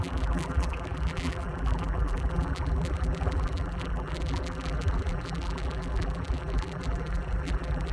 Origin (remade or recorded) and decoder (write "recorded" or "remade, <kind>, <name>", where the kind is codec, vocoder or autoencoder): remade, vocoder, BigVGAN v2